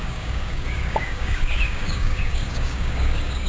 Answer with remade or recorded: remade